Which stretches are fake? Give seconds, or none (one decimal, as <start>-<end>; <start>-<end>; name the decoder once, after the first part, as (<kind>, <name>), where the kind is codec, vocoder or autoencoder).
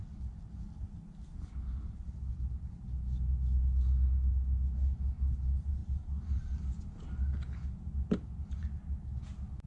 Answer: 5.8-6.8 (vocoder, BigVGAN v2)